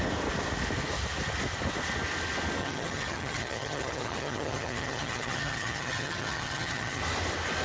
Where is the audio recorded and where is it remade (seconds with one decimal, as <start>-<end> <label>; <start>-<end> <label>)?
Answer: 0.0-2.6 recorded; 2.6-7.0 remade; 7.0-7.6 recorded

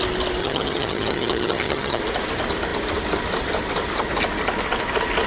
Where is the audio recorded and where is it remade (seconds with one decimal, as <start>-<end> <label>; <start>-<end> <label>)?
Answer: 0.0-0.4 recorded; 0.4-2.0 remade; 2.0-5.3 recorded

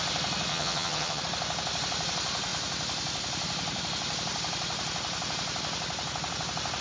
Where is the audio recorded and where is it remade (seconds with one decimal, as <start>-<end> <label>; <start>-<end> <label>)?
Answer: 0.0-0.5 recorded; 0.5-1.2 remade; 1.2-6.8 recorded

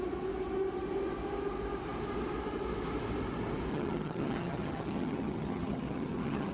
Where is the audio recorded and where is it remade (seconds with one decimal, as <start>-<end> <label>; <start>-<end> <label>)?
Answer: 0.0-3.7 recorded; 3.7-6.5 remade

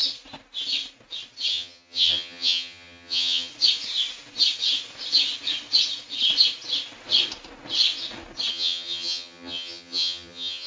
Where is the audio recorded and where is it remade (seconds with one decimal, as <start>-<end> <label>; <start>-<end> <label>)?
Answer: 0.0-1.5 recorded; 1.5-3.5 remade; 3.5-8.5 recorded; 8.5-10.7 remade